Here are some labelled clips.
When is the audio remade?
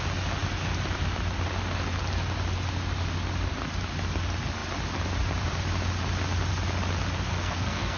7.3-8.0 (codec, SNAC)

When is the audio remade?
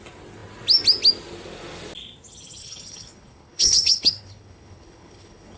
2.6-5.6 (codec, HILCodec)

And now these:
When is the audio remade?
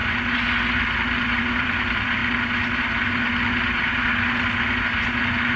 1.4-2.2 (vocoder, BigVGAN v2); 4.8-5.6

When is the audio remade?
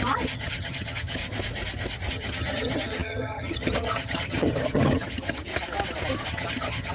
0.0-1.2 (vocoder, HiFi-GAN); 2.1-5.5; 6.2-6.9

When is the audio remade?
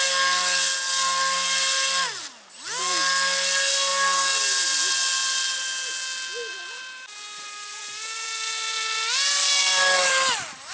6.5-10.1 (vocoder, BigVGAN v2)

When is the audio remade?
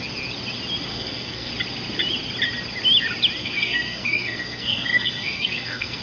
0.9-1.5 (codec, SNAC); 3.4-6.0